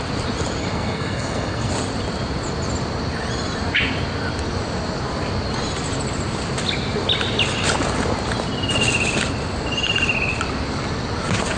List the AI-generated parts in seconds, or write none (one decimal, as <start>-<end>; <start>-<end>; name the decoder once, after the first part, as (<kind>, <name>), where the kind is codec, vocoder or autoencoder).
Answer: 0.6-1.7 (codec, SNAC)